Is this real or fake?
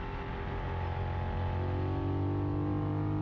real